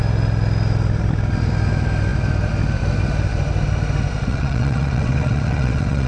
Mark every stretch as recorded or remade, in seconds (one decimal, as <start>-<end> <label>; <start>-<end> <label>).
0.0-4.3 recorded; 4.3-6.1 remade